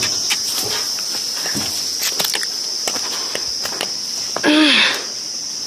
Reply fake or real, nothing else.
real